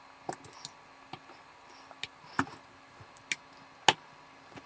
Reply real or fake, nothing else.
real